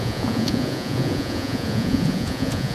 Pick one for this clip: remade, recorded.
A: remade